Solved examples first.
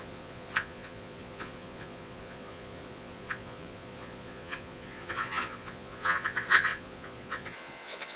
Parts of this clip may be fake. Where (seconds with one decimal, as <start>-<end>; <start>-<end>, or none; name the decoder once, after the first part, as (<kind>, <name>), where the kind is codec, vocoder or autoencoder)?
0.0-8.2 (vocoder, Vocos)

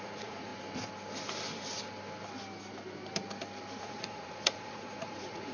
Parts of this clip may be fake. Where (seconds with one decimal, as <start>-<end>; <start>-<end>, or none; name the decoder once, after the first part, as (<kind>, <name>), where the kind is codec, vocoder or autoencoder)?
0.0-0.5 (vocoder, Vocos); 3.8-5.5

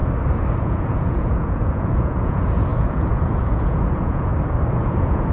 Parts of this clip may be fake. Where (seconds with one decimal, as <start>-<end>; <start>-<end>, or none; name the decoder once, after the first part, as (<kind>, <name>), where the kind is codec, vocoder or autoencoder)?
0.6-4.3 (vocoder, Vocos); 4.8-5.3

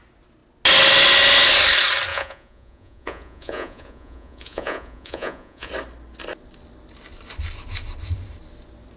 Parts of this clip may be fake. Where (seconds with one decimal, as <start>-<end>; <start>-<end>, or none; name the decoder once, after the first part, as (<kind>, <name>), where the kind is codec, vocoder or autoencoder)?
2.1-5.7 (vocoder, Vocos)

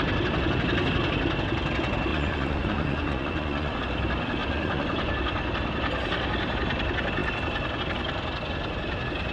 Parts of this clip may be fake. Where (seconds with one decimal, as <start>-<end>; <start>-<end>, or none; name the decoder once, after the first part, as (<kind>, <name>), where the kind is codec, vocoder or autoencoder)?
2.1-3.8 (vocoder, Vocos); 4.4-5.1

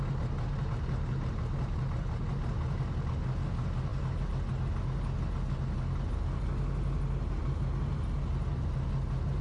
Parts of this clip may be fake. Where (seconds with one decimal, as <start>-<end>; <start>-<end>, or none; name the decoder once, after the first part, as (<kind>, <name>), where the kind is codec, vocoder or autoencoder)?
none

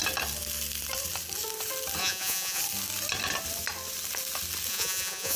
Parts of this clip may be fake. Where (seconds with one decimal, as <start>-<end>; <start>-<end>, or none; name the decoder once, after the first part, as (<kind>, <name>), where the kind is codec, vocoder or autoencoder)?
2.0-2.6 (vocoder, Vocos); 4.7-5.4

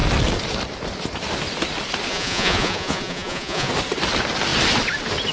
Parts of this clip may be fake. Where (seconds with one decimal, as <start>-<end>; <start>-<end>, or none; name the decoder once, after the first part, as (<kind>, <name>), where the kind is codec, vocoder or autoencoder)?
2.1-3.7 (vocoder, Vocos)